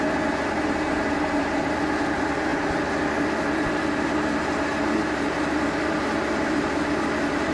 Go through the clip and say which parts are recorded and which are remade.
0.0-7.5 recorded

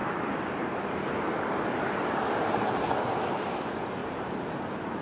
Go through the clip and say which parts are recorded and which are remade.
0.0-3.0 remade; 3.0-4.0 recorded; 4.0-5.0 remade

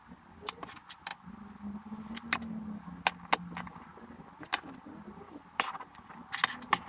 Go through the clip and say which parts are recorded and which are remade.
0.0-6.9 recorded

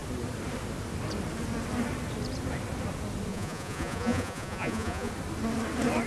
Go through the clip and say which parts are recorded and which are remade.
0.0-3.3 recorded; 3.3-5.1 remade; 5.1-6.1 recorded

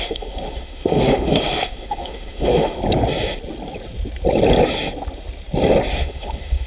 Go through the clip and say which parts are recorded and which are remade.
0.0-2.8 remade; 2.8-5.9 recorded; 5.9-6.7 remade

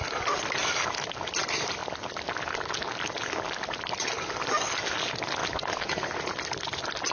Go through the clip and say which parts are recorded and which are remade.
0.0-7.1 recorded

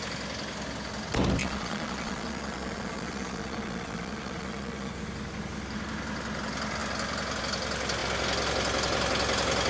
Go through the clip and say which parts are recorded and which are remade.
0.0-1.4 recorded; 1.4-4.9 remade; 4.9-9.7 recorded

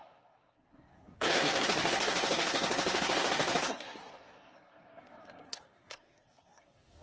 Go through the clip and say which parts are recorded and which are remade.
0.0-7.0 remade